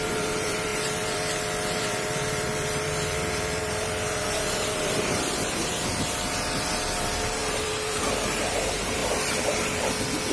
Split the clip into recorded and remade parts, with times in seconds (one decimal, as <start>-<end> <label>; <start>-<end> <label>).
0.0-9.0 remade; 9.0-10.3 recorded